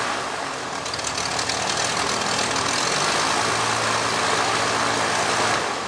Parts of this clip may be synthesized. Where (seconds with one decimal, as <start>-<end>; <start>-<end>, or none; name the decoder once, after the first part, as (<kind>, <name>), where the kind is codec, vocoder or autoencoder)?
none